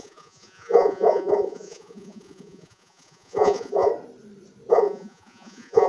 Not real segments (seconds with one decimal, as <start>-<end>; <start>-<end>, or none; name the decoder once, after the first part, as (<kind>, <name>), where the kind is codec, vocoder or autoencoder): 0.0-3.9 (vocoder, Vocos); 4.7-5.9